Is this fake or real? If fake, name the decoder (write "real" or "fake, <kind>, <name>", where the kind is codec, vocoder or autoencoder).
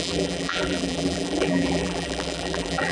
fake, vocoder, BigVGAN v2